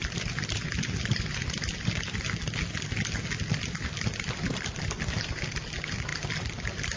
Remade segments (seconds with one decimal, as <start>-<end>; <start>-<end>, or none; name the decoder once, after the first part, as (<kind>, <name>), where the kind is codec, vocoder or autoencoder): none